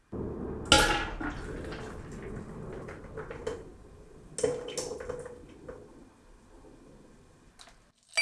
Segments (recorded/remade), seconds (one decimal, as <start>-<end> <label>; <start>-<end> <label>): 0.0-8.2 recorded